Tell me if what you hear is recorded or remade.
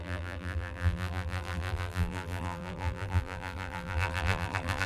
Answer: remade